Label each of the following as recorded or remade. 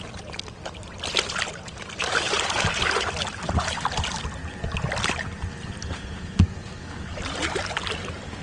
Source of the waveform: recorded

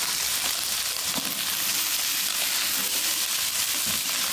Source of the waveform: recorded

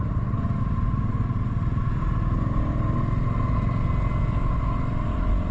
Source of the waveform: recorded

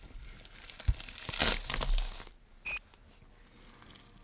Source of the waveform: recorded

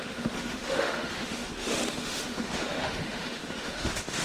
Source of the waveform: remade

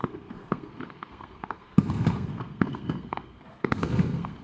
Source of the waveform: remade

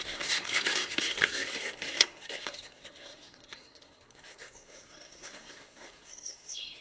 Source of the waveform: remade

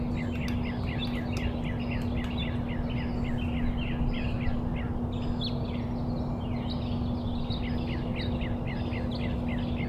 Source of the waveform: recorded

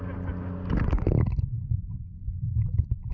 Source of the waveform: recorded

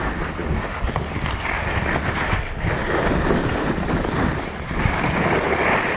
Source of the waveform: recorded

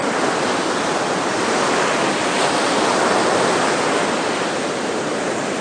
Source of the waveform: recorded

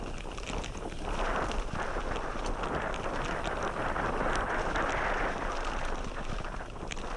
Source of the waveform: recorded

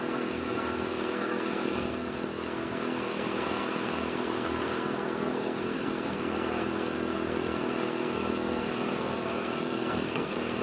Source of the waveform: remade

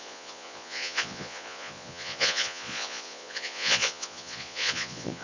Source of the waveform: remade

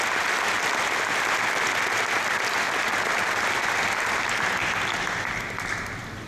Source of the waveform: recorded